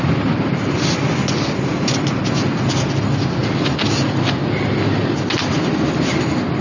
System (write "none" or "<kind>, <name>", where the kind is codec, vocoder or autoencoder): none